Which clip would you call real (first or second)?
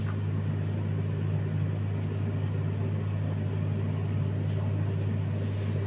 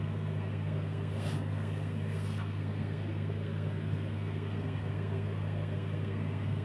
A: first